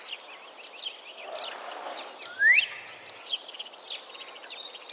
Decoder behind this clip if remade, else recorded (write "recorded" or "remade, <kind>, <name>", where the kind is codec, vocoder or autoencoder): recorded